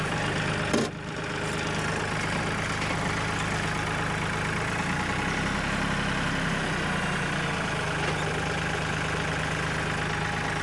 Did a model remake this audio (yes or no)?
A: no